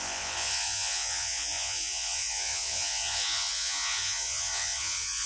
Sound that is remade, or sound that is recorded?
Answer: remade